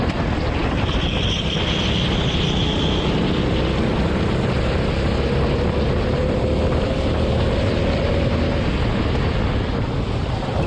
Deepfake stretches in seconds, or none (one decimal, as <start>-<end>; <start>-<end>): none